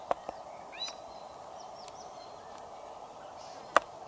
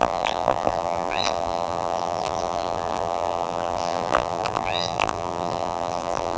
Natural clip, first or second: first